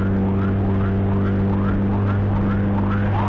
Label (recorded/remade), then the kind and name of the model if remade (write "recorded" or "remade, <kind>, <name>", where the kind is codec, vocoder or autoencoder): recorded